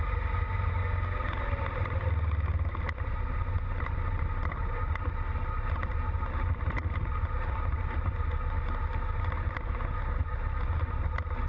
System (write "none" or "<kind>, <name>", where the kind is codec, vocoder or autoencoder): none